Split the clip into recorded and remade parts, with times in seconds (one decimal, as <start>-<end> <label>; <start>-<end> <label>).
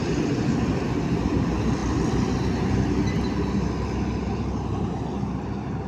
0.0-5.9 recorded